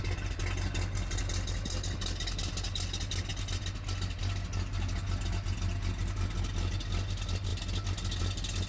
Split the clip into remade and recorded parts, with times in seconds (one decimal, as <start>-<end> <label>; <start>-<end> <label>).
0.0-8.7 recorded